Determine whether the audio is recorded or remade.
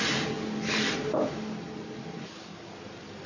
recorded